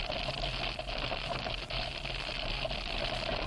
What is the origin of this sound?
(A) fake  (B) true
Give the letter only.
B